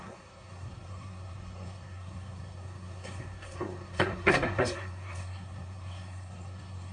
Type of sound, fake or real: fake